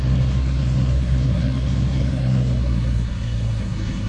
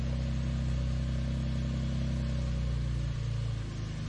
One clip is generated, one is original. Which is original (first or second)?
second